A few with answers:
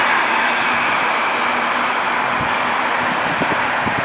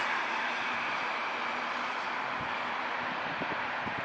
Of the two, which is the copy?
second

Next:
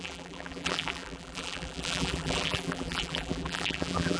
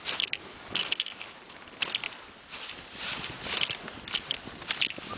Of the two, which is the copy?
first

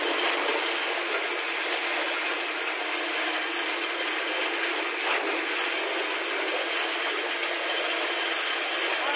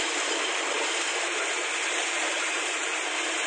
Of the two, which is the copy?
second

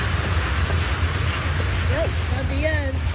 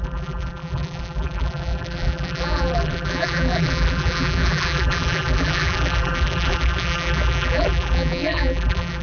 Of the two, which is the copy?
second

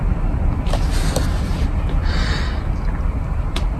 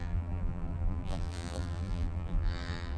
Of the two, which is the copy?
second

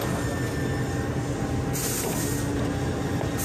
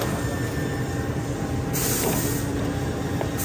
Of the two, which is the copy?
second